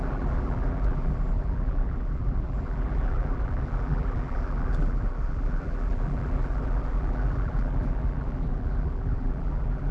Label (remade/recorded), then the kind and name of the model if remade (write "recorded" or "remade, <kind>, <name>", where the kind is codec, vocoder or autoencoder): remade, vocoder, BigVGAN v2